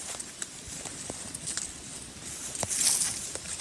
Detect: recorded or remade recorded